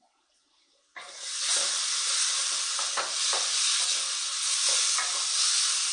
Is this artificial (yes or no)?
no